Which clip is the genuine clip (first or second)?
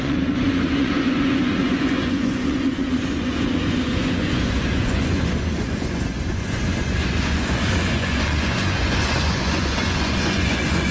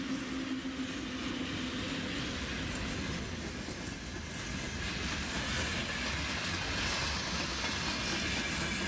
second